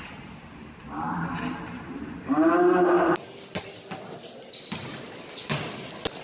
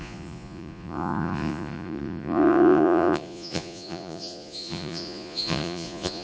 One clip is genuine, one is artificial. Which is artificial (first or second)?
second